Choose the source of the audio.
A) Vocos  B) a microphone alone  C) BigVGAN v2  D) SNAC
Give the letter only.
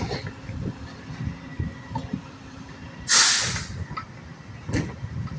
B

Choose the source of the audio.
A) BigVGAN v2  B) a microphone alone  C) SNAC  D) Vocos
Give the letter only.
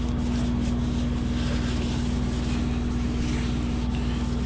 B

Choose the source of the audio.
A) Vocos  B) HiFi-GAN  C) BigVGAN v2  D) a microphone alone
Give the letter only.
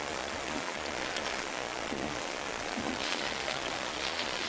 A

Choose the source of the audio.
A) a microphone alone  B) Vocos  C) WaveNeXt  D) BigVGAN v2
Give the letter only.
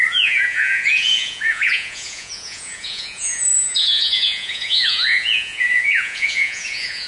B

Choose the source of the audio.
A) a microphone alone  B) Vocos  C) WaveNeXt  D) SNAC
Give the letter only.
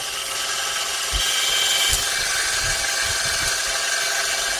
A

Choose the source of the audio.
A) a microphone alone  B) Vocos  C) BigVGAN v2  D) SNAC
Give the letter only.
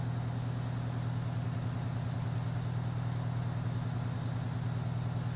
A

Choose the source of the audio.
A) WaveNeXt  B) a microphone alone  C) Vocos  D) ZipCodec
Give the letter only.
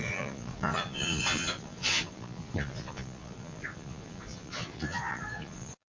C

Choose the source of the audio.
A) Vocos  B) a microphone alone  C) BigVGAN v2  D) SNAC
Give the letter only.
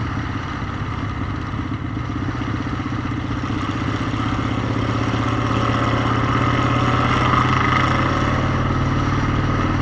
B